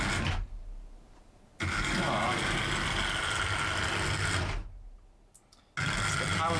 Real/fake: real